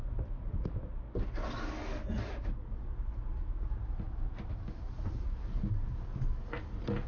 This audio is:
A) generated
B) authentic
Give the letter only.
B